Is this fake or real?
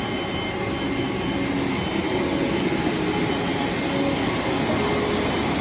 real